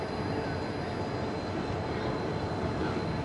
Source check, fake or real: real